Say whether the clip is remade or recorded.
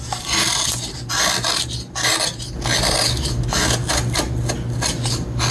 recorded